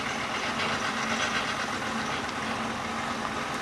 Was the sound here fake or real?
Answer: real